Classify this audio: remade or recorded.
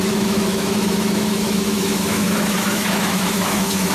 remade